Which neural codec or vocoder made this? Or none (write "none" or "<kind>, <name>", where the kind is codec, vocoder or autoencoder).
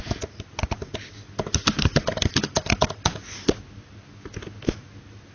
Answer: none